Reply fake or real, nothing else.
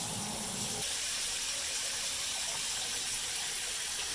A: real